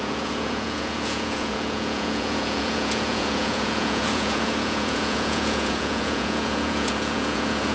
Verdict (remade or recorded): remade